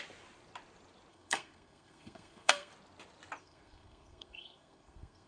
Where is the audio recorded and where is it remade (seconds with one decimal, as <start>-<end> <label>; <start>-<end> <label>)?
0.0-1.1 recorded; 1.1-2.7 remade; 2.7-3.4 recorded; 3.4-5.3 remade